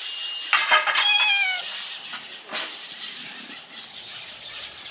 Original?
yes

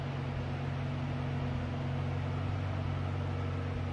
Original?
yes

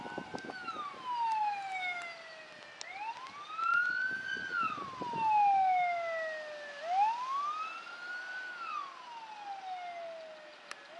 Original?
yes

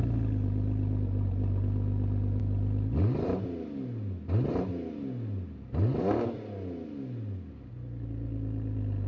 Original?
yes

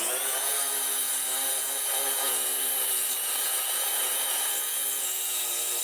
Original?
no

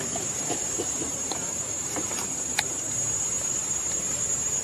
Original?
no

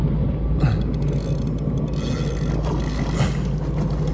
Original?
yes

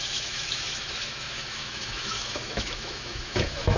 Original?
no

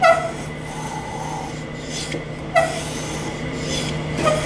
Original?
yes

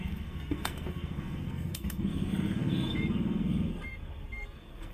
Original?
no